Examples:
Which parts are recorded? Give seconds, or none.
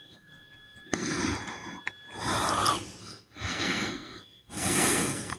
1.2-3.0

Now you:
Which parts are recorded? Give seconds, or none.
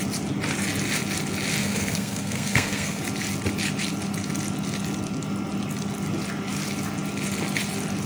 0.0-1.6; 3.0-8.1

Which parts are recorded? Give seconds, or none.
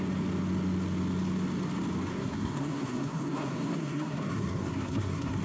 0.0-2.1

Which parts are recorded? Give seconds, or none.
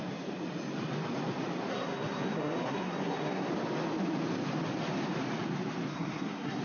0.0-1.7; 3.5-5.9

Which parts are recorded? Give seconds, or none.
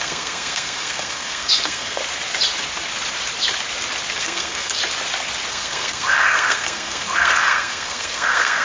2.0-4.2; 4.8-5.5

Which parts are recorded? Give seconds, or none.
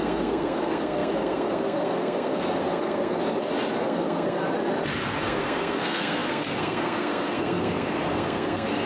3.2-3.8; 4.4-5.2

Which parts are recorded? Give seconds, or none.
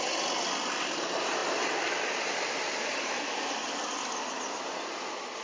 0.0-5.4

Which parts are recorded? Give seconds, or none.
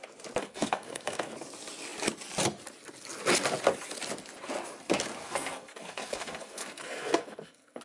0.0-0.4; 1.3-5.2